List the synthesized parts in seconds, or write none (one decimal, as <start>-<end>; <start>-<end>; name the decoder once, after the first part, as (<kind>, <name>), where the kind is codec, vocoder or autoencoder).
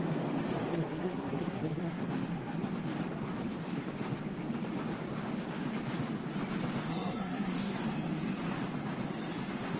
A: 0.7-2.0 (codec, SNAC); 6.9-7.7